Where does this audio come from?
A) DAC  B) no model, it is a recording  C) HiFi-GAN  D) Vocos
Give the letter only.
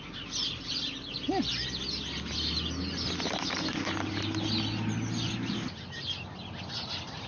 B